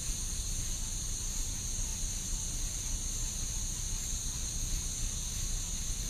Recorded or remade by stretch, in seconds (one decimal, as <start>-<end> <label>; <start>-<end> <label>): 0.0-1.9 remade; 1.9-5.6 recorded; 5.6-6.1 remade